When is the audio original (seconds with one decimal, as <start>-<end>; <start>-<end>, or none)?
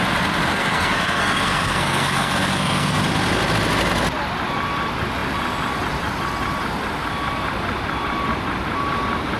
0.0-0.5; 3.0-9.4